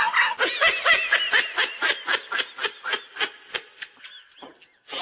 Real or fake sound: real